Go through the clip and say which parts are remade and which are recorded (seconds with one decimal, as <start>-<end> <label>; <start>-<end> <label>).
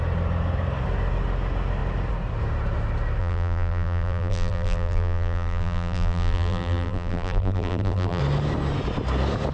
0.0-3.2 recorded; 3.2-8.2 remade; 8.2-9.5 recorded